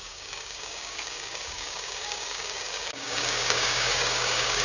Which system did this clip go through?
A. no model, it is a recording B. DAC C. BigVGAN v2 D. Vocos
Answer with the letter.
B